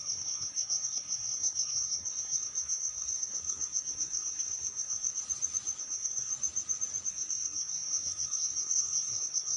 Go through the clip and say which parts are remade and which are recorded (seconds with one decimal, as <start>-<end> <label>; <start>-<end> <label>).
0.0-5.2 remade; 5.2-5.8 recorded; 5.8-6.3 remade; 6.3-7.1 recorded; 7.1-9.6 remade